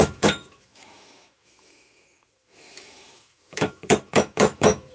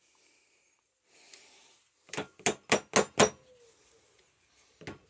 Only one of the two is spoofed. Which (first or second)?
first